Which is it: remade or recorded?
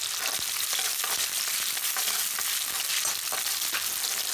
recorded